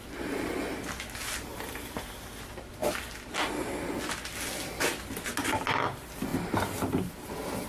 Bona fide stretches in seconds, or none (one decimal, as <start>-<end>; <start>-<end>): 0.0-1.5; 2.4-7.7